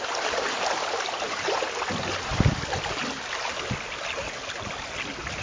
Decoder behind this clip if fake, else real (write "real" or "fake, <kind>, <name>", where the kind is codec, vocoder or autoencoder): real